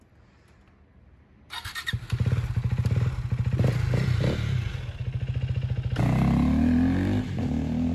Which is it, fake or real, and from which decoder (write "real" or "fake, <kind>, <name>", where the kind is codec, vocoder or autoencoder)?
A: real